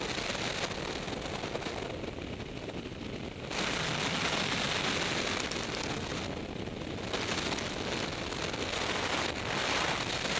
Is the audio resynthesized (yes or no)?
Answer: no